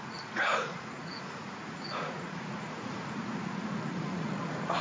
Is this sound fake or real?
fake